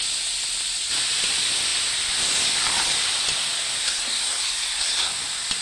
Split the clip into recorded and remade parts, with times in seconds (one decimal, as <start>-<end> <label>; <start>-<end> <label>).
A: 0.0-3.8 recorded; 3.8-5.1 remade; 5.1-5.6 recorded